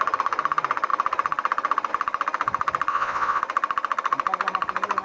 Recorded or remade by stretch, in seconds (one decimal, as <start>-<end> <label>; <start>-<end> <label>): 0.0-2.9 recorded; 2.9-3.4 remade; 3.4-5.0 recorded